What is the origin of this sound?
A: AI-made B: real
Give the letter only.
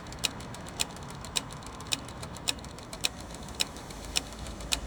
A